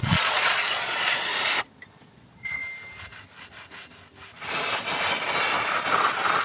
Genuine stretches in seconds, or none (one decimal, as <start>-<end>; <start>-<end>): 1.3-2.1; 2.6-6.4